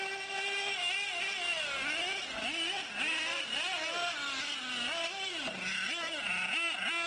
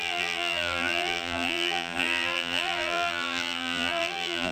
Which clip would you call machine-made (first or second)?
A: second